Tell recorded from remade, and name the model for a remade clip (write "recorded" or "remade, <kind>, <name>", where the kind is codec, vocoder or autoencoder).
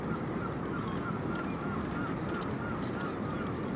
recorded